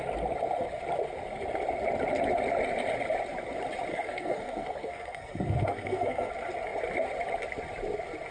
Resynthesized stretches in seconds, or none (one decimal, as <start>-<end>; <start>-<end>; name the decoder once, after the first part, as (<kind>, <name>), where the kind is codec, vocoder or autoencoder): 3.9-6.3 (codec, SNAC)